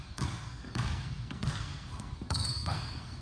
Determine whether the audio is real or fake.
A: fake